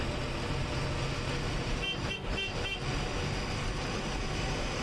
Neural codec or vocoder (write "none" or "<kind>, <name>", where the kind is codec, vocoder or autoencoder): none